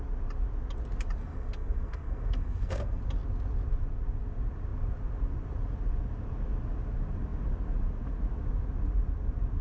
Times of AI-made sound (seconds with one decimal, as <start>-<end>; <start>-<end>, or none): 1.2-3.0